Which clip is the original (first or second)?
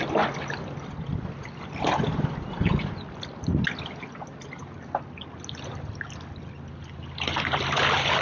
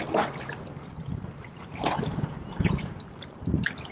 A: first